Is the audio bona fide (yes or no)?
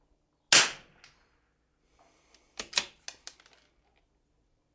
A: yes